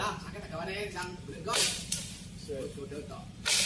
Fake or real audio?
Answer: fake